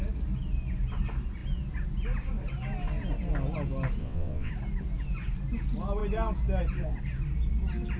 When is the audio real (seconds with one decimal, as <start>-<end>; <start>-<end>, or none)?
0.0-4.0; 4.5-8.0